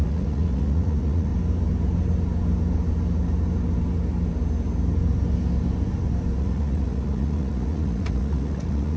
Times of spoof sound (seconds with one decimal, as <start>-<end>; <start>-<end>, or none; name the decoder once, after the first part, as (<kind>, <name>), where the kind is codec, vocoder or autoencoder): 0.0-1.3 (vocoder, Vocos); 6.4-9.0